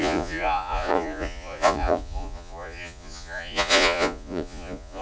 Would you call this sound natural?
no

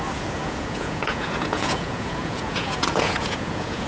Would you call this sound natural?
no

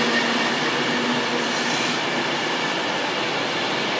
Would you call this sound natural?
yes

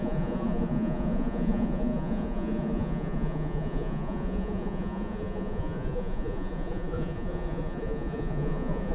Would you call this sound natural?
no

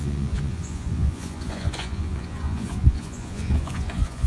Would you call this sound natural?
no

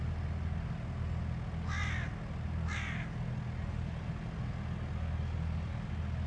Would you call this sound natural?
yes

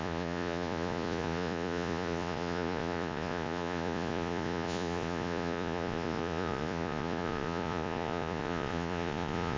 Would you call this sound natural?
no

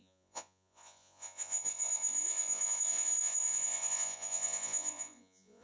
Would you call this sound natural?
no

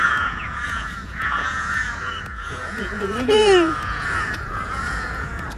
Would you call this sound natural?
no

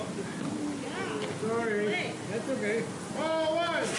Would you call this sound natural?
yes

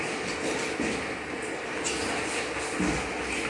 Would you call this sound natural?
yes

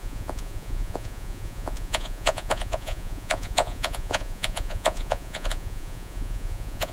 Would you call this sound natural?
no